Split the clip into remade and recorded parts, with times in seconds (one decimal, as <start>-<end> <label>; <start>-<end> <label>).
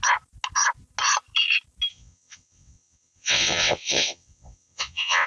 0.0-1.9 recorded; 1.9-5.3 remade